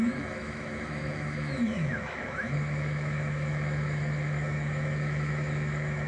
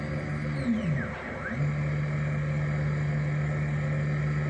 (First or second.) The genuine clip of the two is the second